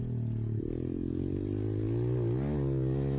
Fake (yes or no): no